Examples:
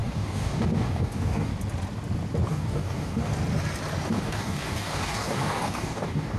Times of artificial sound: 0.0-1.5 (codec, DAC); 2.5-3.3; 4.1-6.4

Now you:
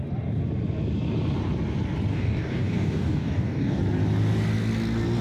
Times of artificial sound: 2.1-3.8 (codec, DAC)

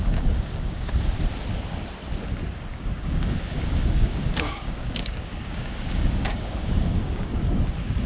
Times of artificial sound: 0.0-0.9 (codec, DAC); 2.7-7.6

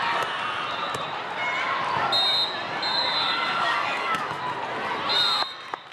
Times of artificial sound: 3.3-4.4 (codec, DAC)